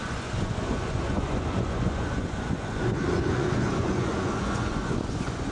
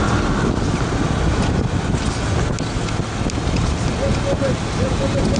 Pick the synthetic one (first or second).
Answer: first